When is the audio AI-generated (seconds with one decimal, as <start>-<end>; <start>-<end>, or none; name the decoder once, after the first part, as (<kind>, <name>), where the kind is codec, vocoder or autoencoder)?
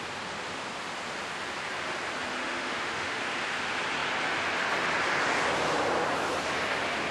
2.4-3.2 (autoencoder, DAC-VAE)